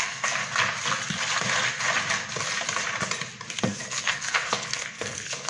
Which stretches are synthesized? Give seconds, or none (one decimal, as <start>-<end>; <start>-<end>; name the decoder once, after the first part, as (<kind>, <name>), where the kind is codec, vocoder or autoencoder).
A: 0.0-0.4 (codec, SNAC); 3.6-5.5